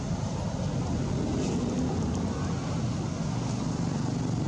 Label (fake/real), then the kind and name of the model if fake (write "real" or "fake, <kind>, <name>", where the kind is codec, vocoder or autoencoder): real